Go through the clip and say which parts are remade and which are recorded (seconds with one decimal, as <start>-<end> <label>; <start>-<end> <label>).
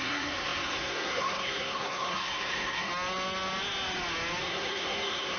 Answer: 0.0-2.9 remade; 2.9-4.4 recorded; 4.4-5.4 remade